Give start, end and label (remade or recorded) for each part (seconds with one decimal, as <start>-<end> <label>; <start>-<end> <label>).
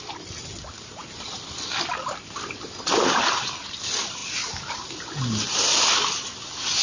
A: 0.0-6.8 recorded